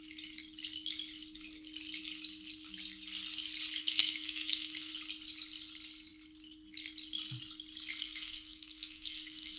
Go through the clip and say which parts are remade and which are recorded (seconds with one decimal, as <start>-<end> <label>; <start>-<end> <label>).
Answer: 0.0-3.8 recorded; 3.8-4.9 remade; 4.9-8.0 recorded; 8.0-9.6 remade